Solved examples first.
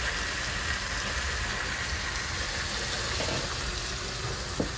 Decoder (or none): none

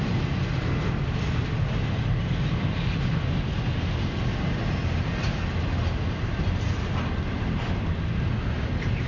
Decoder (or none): none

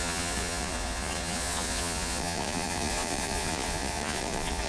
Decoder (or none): vocoder, Vocos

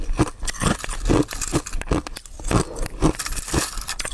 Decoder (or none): none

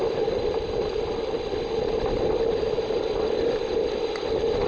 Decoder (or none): none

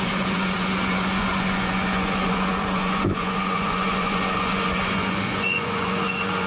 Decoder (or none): vocoder, Vocos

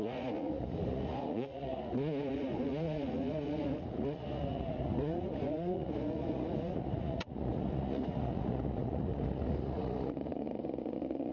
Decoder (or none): vocoder, Vocos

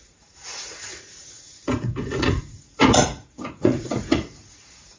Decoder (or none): vocoder, Vocos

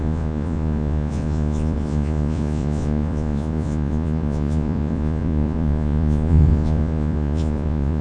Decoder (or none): vocoder, Vocos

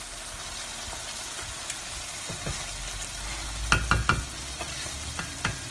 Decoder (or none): none